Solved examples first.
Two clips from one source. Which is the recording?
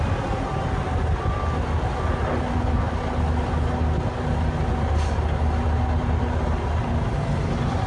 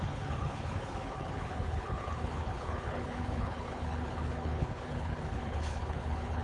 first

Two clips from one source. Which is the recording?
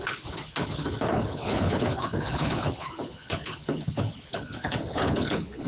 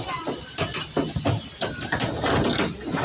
second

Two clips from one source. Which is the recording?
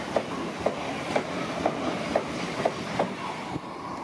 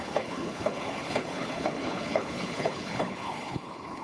first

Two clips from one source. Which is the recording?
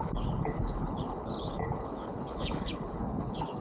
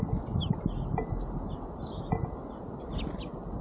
second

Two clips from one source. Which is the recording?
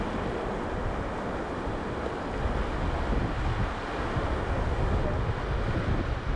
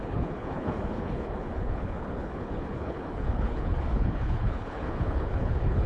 first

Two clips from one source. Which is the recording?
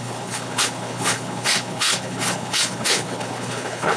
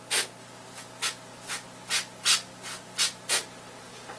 second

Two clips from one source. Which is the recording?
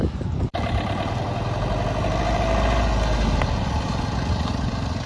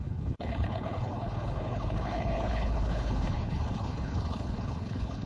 first